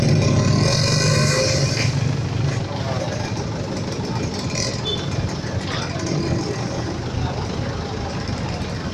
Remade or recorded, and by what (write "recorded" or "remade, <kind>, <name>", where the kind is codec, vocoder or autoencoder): recorded